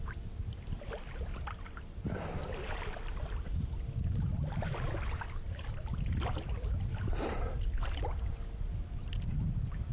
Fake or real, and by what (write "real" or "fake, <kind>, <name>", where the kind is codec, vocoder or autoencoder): real